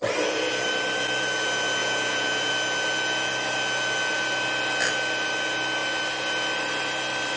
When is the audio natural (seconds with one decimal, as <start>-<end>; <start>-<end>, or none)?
0.0-1.8; 2.5-7.4